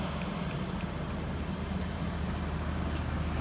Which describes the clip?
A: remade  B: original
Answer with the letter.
B